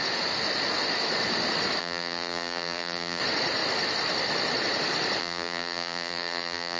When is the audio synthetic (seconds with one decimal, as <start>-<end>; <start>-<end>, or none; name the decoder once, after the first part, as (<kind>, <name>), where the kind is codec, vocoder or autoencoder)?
1.8-3.2 (vocoder, BigVGAN v2); 5.2-6.8